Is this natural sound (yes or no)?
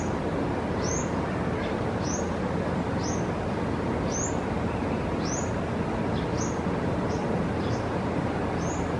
yes